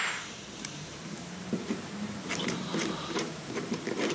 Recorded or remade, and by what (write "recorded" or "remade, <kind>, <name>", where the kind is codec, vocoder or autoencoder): remade, vocoder, BigVGAN v2